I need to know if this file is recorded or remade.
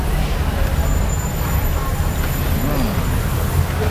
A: recorded